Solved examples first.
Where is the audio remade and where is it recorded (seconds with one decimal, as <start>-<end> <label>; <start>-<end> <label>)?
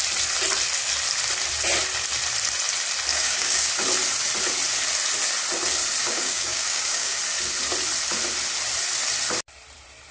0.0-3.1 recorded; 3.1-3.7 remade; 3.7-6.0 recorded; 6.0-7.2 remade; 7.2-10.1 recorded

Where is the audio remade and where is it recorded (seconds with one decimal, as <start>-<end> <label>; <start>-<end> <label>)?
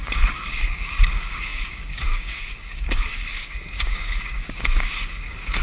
0.0-5.6 remade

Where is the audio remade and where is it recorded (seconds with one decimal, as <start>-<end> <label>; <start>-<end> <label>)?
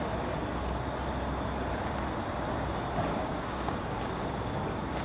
0.0-3.2 recorded; 3.2-4.5 remade; 4.5-5.0 recorded